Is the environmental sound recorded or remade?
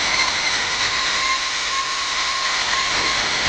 remade